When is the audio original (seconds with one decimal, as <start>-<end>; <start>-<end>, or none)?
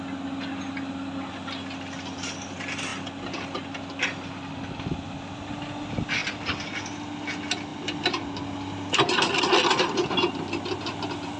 0.0-11.4